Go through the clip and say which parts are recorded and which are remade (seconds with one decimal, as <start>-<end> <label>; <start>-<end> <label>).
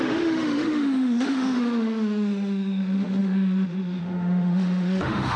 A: 0.0-5.4 remade